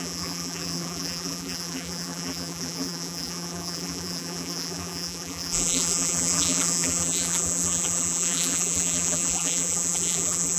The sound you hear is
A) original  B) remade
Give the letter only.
B